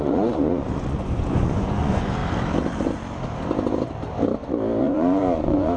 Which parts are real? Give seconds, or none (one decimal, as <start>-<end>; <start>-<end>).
2.2-4.8